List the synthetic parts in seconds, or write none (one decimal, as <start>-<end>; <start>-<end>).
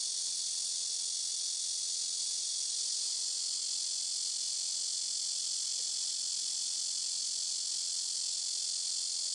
none